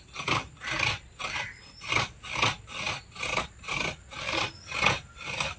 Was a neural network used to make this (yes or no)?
no